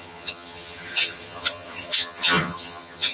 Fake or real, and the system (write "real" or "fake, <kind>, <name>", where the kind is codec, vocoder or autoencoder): fake, vocoder, HiFi-GAN